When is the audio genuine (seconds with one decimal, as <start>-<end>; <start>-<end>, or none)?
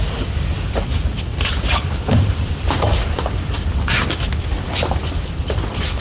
0.0-1.3; 4.9-6.0